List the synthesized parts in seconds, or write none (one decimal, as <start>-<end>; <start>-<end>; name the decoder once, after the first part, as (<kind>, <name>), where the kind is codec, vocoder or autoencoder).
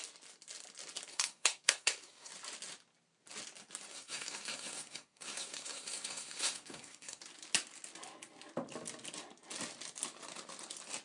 1.1-2.3 (codec, SNAC); 3.9-7.2